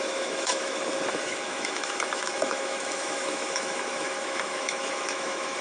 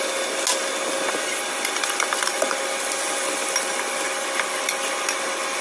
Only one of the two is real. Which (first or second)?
second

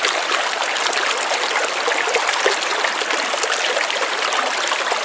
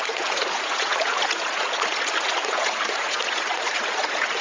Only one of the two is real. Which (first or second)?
first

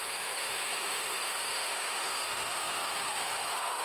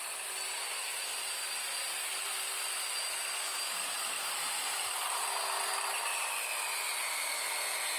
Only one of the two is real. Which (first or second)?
second